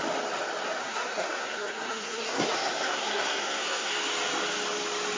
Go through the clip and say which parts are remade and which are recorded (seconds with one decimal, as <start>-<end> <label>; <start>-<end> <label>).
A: 0.0-0.8 recorded; 0.8-3.9 remade; 3.9-5.2 recorded